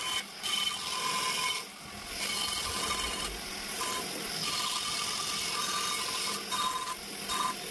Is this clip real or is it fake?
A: real